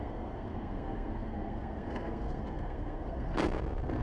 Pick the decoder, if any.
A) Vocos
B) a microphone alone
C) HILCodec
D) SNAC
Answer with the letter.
D